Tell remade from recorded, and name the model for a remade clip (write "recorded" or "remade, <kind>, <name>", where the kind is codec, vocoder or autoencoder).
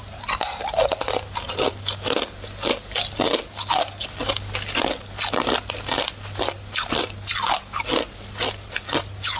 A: recorded